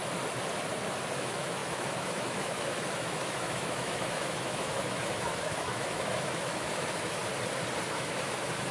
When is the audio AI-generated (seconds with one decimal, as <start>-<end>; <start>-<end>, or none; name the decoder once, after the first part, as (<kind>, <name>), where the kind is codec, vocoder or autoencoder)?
1.1-7.2 (autoencoder, DAC-VAE); 7.9-8.7